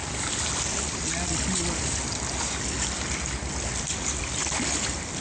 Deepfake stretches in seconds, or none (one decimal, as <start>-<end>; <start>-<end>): 0.0-0.5